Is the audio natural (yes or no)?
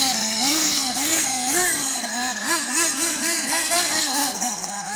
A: no